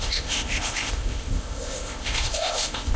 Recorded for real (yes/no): no